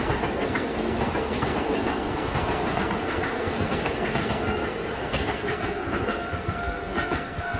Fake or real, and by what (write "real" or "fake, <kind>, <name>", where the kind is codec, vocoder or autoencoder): fake, codec, SNAC